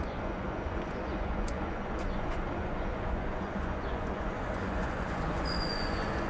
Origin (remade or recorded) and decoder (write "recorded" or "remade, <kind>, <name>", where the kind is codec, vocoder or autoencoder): remade, vocoder, Vocos